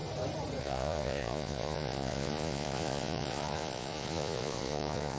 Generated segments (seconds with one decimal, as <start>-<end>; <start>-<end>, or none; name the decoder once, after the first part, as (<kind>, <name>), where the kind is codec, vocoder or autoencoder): 0.6-5.2 (vocoder, Vocos)